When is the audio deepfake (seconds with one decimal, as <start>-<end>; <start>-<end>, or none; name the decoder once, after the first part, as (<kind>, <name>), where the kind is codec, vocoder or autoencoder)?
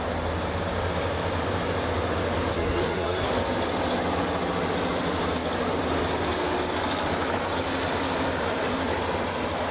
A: 2.5-3.3 (codec, SNAC)